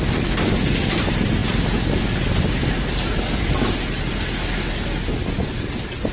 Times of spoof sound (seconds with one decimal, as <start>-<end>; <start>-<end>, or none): none